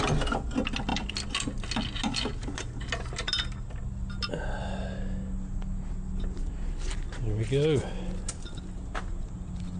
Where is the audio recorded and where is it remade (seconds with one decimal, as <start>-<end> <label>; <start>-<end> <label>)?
0.0-9.8 recorded

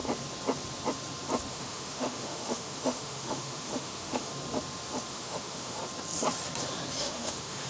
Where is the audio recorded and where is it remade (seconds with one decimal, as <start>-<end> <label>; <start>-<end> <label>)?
0.0-1.5 recorded; 1.5-4.3 remade; 4.3-5.1 recorded; 5.1-5.8 remade; 5.8-7.0 recorded; 7.0-7.7 remade

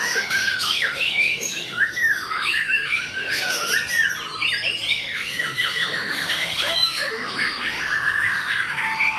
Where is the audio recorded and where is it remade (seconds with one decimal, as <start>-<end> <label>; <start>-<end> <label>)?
0.0-3.7 remade; 3.7-4.9 recorded; 4.9-9.2 remade